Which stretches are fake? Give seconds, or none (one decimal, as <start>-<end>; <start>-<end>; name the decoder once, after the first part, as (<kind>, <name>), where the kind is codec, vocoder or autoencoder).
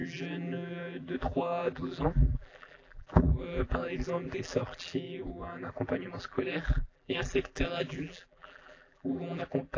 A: 0.0-9.8 (vocoder, BigVGAN v2)